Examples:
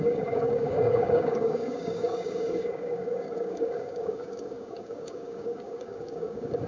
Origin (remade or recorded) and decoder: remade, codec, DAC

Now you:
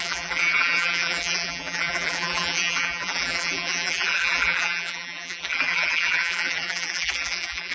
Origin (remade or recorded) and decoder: remade, vocoder, BigVGAN v2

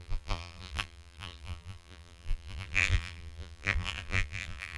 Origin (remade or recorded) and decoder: remade, vocoder, BigVGAN v2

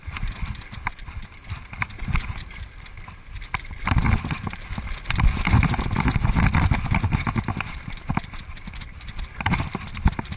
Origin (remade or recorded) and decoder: remade, vocoder, BigVGAN v2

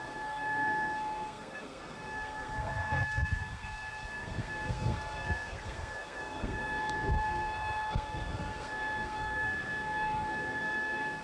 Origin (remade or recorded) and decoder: remade, codec, SNAC